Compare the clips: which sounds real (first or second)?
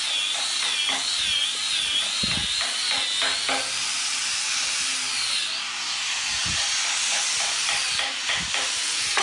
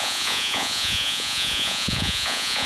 first